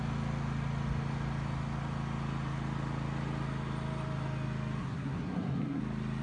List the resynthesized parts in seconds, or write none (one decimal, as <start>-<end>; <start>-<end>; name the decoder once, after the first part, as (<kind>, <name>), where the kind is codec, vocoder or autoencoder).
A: 4.8-5.8 (codec, SNAC)